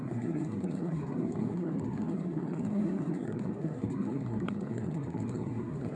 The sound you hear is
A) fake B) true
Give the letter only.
A